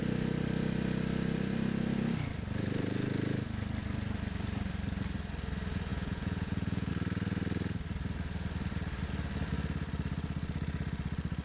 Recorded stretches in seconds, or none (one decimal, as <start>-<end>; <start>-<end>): 0.0-5.9; 6.9-11.4